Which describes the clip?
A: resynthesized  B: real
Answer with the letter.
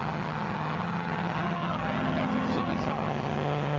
A